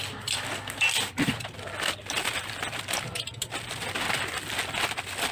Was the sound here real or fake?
real